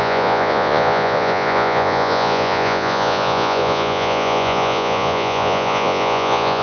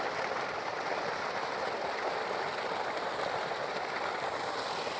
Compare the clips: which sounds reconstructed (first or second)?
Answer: first